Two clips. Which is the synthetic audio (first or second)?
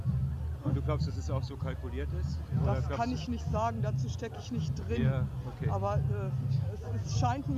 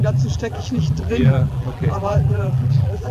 second